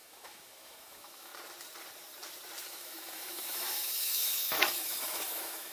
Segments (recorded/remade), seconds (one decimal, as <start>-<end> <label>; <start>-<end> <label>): 0.0-1.3 remade; 1.3-2.7 recorded; 2.7-5.7 remade